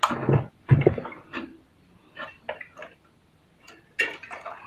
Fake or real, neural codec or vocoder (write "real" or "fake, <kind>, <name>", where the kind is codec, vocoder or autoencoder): real